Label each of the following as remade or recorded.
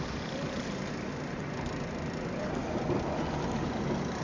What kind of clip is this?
recorded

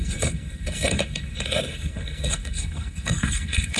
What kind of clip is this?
remade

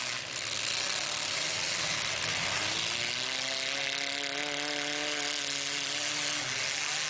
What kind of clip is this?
recorded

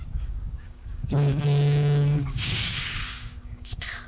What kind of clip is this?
remade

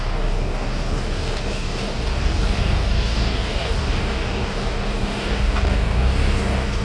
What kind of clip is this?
remade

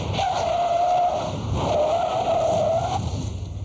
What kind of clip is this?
recorded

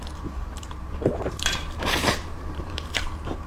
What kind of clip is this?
remade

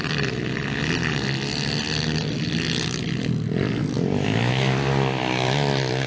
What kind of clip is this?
recorded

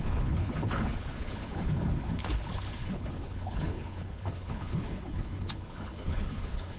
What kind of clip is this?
remade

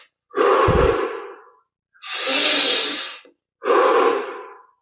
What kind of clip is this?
recorded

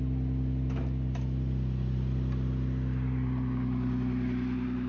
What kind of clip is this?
recorded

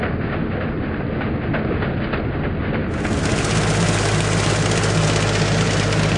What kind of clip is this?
recorded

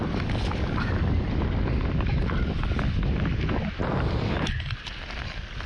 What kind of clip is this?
recorded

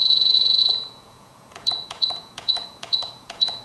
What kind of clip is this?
remade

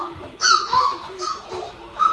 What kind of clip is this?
remade